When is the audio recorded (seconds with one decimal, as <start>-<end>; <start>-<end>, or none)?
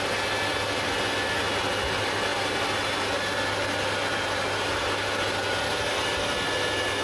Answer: 0.0-7.0